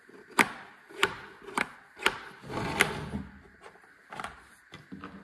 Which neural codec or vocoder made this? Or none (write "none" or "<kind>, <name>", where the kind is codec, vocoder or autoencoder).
none